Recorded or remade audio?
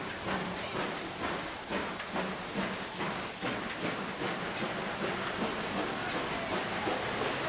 recorded